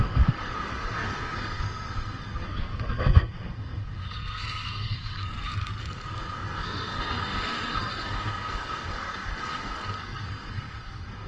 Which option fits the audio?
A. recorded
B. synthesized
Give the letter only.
B